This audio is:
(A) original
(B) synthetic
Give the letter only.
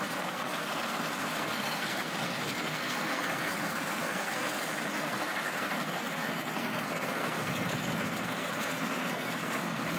B